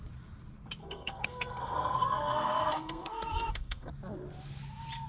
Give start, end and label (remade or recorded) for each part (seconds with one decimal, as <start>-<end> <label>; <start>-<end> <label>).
0.0-0.8 recorded; 0.8-3.9 remade; 3.9-5.1 recorded